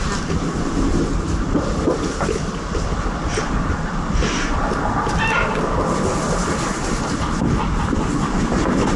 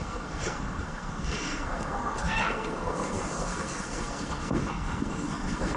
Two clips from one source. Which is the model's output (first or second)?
second